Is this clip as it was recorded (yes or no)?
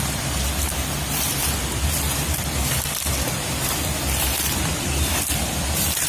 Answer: no